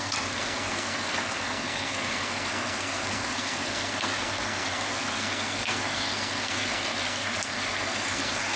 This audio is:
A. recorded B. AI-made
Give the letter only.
B